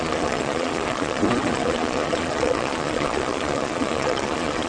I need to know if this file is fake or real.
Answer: fake